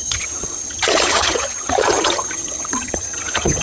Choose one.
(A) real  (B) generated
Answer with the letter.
B